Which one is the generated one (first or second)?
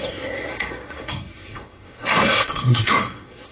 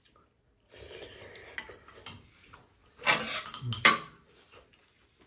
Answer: first